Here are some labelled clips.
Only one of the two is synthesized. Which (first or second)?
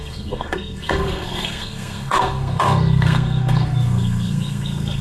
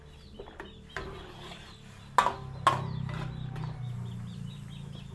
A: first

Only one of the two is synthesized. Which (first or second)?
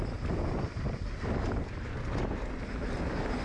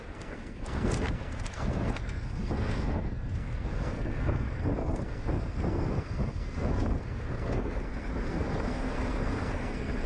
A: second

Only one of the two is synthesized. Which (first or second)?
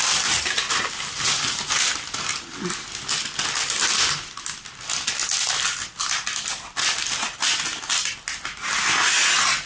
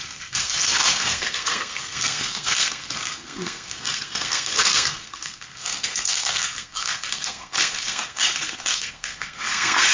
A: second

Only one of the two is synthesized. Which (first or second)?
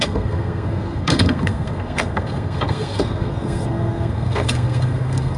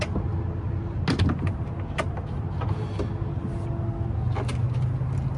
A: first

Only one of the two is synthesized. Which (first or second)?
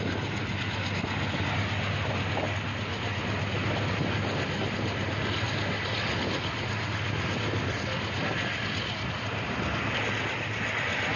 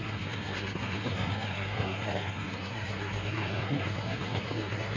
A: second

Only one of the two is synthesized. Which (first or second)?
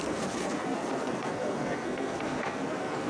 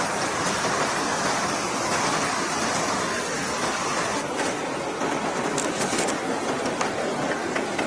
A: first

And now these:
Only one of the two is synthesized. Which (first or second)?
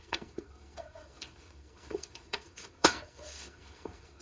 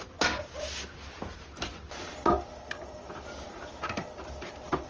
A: first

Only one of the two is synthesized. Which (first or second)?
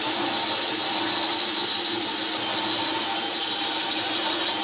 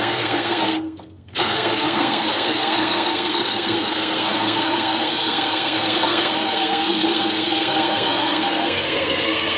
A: second